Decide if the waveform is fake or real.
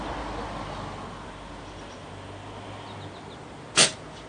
real